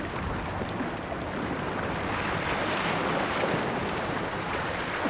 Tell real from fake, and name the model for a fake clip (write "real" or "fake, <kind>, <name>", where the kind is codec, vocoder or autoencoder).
real